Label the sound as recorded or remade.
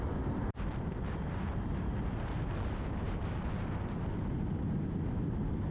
remade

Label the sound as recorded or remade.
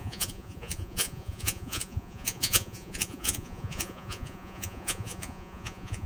remade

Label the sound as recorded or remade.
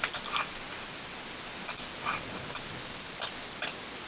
recorded